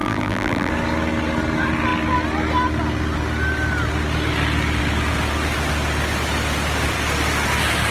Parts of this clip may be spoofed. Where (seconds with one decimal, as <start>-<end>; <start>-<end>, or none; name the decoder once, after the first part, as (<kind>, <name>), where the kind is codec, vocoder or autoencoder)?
0.0-0.7 (vocoder, BigVGAN v2)